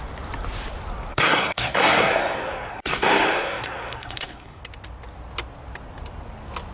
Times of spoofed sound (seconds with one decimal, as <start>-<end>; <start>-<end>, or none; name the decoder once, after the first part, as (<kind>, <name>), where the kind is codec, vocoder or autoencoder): 1.1-4.6 (codec, SNAC)